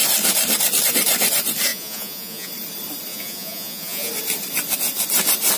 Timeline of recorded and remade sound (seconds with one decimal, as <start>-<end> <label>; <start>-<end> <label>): 0.0-1.7 recorded; 1.7-2.5 remade; 2.5-3.1 recorded; 3.1-4.1 remade; 4.1-5.6 recorded